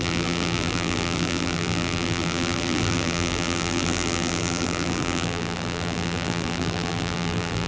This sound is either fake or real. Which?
fake